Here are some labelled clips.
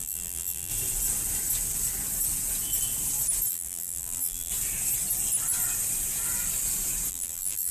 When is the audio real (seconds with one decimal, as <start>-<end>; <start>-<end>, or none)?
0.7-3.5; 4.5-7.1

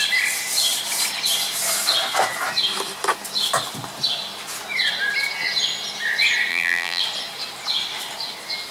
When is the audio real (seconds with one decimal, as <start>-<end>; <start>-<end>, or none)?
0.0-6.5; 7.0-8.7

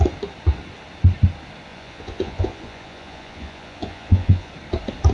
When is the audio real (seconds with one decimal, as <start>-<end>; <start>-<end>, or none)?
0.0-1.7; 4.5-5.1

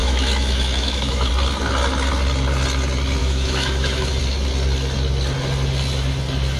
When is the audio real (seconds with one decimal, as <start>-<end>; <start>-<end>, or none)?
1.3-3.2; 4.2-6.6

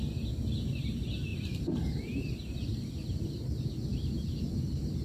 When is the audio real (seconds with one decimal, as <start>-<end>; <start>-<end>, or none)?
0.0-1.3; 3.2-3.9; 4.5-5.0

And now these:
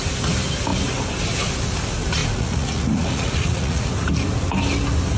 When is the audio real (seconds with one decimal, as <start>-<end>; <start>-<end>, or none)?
0.0-2.2; 3.9-5.2

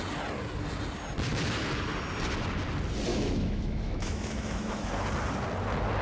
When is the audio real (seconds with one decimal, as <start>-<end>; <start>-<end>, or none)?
0.0-3.1; 4.9-6.0